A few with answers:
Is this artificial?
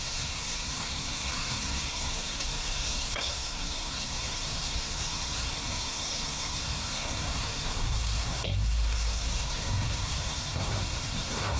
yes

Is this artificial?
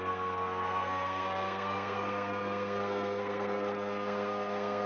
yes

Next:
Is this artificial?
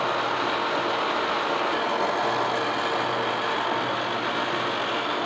no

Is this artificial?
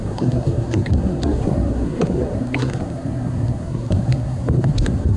yes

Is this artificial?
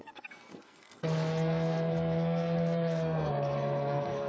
yes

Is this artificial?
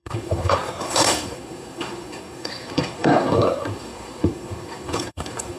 yes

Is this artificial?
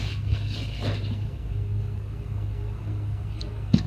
yes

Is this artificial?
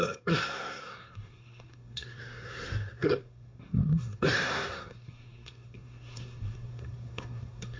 yes